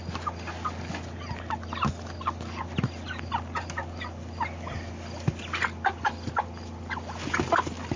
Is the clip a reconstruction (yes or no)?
no